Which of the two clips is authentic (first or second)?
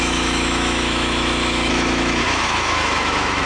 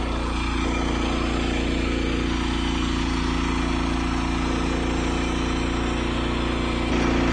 second